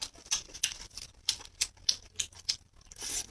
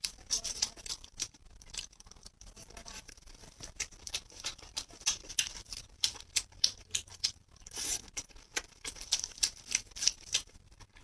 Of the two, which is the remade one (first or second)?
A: second